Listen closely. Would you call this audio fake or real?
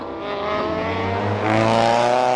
real